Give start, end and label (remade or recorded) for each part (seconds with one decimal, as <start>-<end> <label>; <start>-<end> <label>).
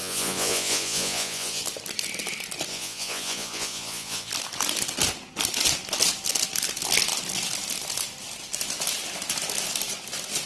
0.0-1.6 remade; 1.6-2.7 recorded; 2.7-4.3 remade; 4.3-10.5 recorded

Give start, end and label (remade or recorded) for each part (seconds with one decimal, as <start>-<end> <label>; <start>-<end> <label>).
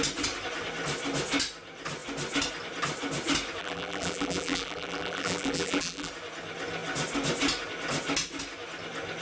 0.0-3.6 recorded; 3.6-6.1 remade; 6.1-9.2 recorded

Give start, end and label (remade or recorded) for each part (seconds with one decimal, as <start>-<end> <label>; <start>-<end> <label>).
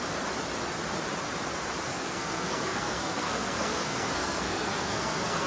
0.0-1.9 recorded; 1.9-5.5 remade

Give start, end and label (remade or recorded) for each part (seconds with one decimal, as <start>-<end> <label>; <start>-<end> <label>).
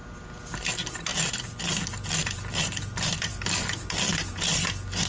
0.0-0.7 recorded; 0.7-3.3 remade; 3.3-4.3 recorded; 4.3-5.1 remade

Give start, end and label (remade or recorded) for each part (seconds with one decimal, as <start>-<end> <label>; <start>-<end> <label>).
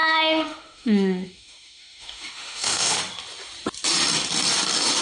0.0-3.0 remade; 3.0-5.0 recorded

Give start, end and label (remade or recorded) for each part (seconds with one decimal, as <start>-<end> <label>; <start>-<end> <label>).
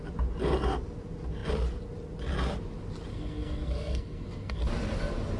0.0-3.1 recorded; 3.1-4.6 remade; 4.6-5.4 recorded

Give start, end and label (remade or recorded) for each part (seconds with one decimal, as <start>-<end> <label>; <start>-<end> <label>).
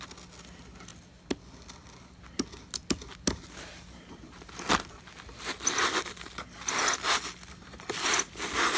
0.0-8.8 recorded